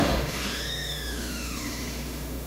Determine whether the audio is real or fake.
fake